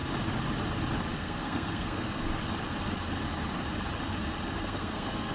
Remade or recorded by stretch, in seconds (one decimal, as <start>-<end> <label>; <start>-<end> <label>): 0.0-1.1 recorded; 1.1-2.3 remade; 2.3-4.6 recorded; 4.6-5.3 remade